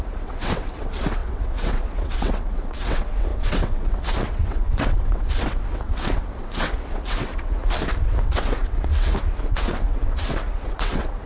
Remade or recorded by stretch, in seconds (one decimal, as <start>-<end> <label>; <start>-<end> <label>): 0.0-7.6 remade; 7.6-8.2 recorded; 8.2-11.3 remade